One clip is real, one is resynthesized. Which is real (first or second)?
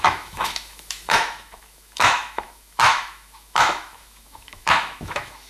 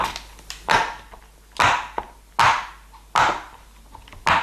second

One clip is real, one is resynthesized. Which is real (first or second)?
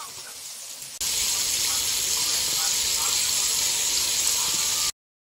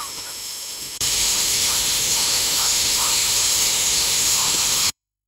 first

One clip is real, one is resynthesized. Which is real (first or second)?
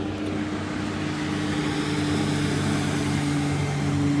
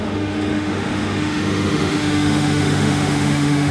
first